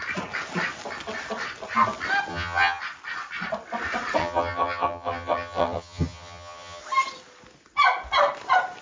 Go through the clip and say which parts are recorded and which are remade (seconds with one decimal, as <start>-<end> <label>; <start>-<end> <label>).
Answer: 0.0-2.3 recorded; 2.3-2.8 remade; 2.8-4.2 recorded; 4.2-6.8 remade; 6.8-8.8 recorded